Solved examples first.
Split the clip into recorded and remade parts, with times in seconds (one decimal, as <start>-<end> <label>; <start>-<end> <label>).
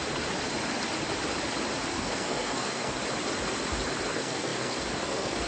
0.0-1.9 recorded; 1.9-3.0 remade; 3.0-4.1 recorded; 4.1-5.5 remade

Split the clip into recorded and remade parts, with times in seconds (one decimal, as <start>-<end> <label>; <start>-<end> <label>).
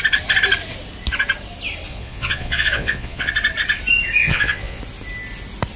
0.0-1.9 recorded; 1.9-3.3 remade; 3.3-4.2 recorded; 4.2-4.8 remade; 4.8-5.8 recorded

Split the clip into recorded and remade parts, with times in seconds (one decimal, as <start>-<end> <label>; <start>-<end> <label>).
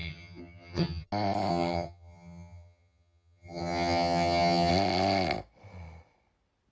0.0-1.1 remade; 1.1-1.5 recorded; 1.5-4.7 remade; 4.7-6.7 recorded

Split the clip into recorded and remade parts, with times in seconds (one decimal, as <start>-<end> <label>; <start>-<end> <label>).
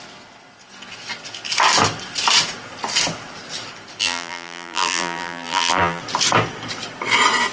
0.0-4.0 recorded; 4.0-6.0 remade; 6.0-7.5 recorded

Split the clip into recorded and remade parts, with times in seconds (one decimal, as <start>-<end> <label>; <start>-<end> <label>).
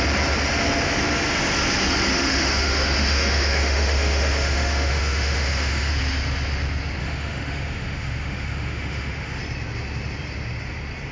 0.0-2.1 recorded; 2.1-5.9 remade; 5.9-7.0 recorded; 7.0-9.4 remade; 9.4-11.1 recorded